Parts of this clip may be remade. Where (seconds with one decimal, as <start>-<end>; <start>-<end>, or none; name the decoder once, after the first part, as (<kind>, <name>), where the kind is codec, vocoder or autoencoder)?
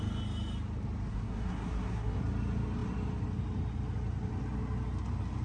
1.1-2.2 (codec, SNAC)